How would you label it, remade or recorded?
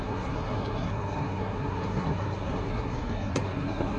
remade